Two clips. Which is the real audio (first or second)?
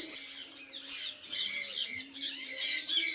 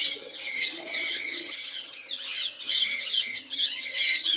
first